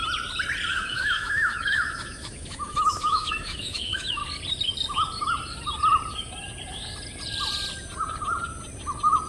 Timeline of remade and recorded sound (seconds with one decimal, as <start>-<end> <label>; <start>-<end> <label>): 0.0-0.7 recorded; 0.7-4.2 remade; 4.2-9.3 recorded